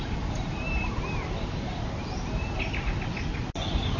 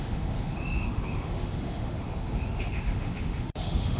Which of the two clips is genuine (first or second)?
first